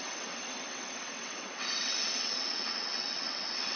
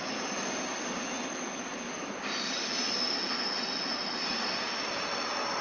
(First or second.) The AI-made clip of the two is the first